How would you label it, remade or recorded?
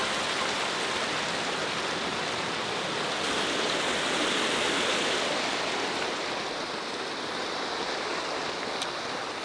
recorded